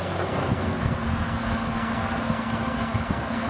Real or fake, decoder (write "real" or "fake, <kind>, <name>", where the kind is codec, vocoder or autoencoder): fake, codec, SNAC